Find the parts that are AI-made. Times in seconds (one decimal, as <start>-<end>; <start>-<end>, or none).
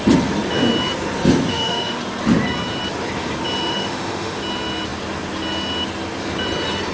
1.5-2.0; 3.7-4.4